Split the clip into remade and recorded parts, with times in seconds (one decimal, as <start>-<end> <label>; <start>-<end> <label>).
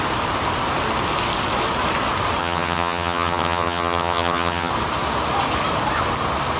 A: 0.0-2.4 recorded; 2.4-4.7 remade; 4.7-6.6 recorded